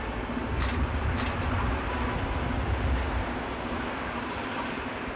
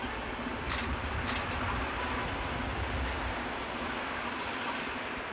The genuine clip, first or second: first